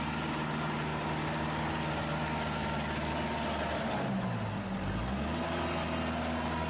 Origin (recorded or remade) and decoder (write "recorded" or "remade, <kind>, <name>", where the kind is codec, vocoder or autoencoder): recorded